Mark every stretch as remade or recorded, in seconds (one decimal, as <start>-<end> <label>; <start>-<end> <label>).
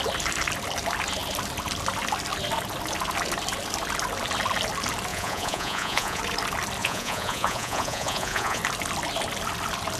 0.0-5.1 recorded; 5.1-6.2 remade; 6.2-6.8 recorded; 6.8-8.6 remade; 8.6-10.0 recorded